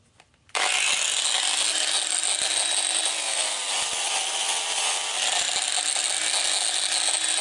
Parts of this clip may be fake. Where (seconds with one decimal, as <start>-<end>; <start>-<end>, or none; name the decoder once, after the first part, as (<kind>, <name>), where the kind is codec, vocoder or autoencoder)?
none